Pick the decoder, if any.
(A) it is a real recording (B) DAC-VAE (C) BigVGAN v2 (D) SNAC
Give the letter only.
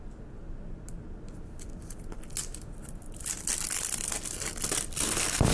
A